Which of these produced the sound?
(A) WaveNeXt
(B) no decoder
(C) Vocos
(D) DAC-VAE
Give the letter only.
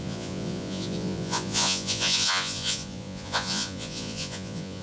C